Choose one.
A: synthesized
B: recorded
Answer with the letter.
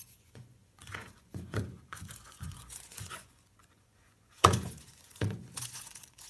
A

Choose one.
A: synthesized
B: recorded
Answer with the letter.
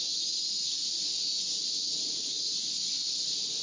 B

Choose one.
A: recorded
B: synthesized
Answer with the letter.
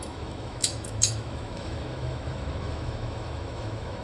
B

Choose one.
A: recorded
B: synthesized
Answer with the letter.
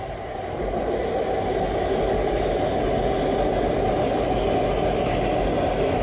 A